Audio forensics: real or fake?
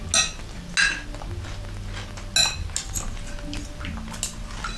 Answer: real